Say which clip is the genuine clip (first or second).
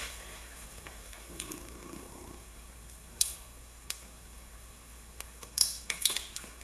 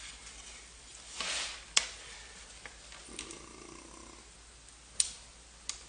second